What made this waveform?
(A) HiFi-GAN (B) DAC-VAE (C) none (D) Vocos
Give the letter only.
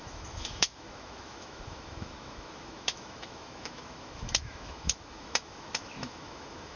B